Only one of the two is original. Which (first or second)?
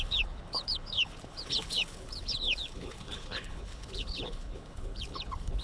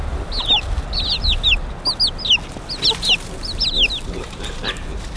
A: second